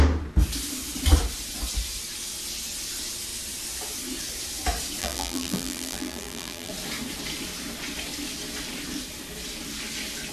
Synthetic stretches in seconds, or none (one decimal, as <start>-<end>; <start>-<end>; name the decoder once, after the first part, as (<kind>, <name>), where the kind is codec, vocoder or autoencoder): 5.0-6.7 (vocoder, BigVGAN v2)